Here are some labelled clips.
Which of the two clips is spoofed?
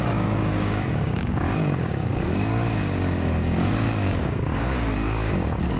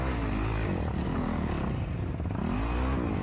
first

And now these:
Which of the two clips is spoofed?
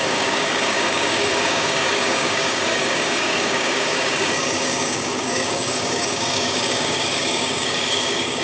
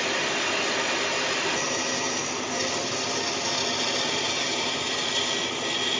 first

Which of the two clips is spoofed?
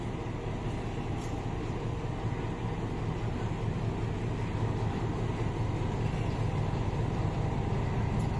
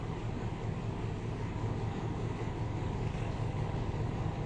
second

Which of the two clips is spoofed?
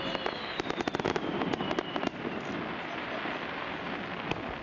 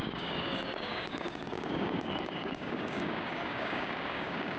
second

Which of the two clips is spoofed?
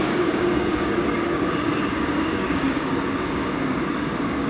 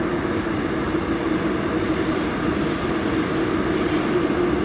first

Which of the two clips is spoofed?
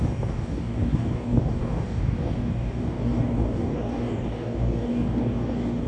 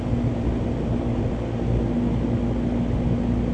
first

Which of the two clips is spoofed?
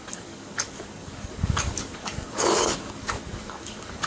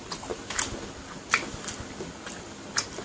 first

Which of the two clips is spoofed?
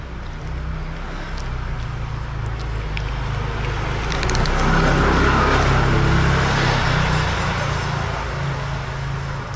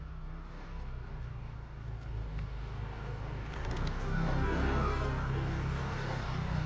second